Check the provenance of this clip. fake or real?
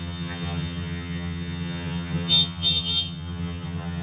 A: fake